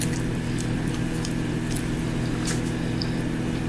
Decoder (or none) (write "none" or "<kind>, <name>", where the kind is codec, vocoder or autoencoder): vocoder, BigVGAN v2